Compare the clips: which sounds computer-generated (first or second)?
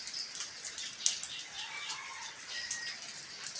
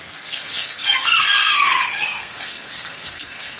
second